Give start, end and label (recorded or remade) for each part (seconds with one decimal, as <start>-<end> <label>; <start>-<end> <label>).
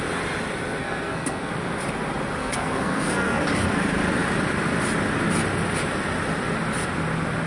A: 0.0-0.8 recorded; 0.8-1.5 remade; 1.5-2.4 recorded; 2.4-3.4 remade; 3.4-7.5 recorded